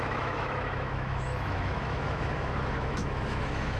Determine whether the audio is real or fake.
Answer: fake